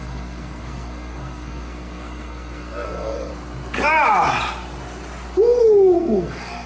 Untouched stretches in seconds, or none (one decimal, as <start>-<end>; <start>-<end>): 3.3-5.6